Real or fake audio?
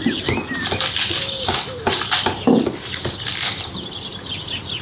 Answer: real